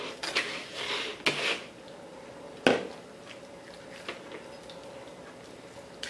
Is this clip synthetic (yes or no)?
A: no